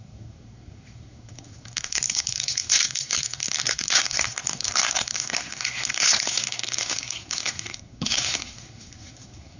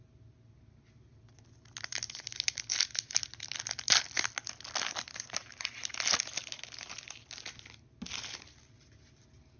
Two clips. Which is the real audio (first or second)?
second